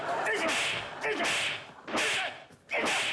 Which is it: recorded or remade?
recorded